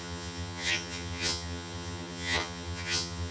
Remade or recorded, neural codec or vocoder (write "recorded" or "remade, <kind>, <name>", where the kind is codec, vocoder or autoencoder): remade, vocoder, HiFi-GAN